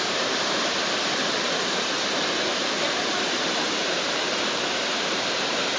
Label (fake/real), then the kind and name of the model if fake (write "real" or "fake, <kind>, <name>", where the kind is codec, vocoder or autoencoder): fake, vocoder, BigVGAN v2